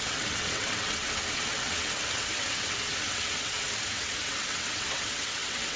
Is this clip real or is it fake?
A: fake